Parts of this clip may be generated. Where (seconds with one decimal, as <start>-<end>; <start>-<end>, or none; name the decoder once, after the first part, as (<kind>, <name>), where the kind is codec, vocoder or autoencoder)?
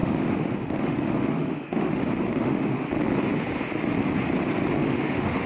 0.0-2.9 (autoencoder, DAC-VAE); 4.8-5.5